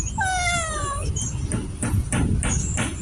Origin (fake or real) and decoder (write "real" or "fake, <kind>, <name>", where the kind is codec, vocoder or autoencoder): real